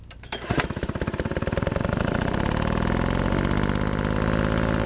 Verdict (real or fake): real